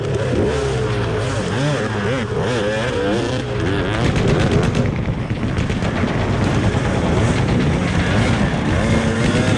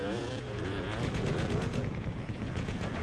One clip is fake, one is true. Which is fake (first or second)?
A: second